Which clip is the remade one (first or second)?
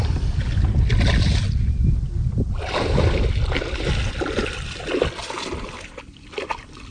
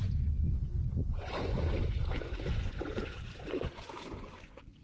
second